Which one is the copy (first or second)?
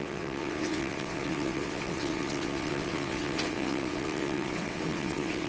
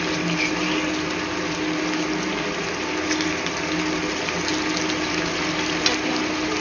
first